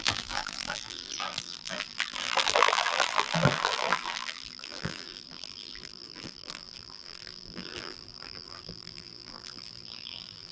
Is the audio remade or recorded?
remade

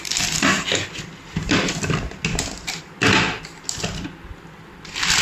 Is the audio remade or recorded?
recorded